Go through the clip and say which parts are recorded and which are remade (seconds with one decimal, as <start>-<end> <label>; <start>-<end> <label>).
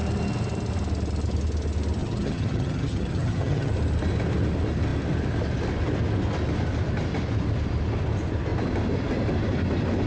0.0-2.0 recorded; 2.0-3.7 remade; 3.7-10.1 recorded